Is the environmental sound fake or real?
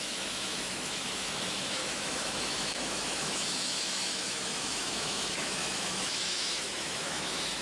fake